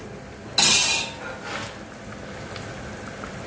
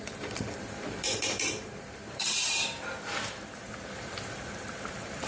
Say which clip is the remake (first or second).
second